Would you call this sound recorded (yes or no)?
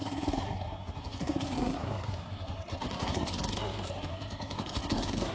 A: no